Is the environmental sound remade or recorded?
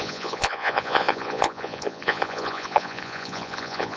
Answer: remade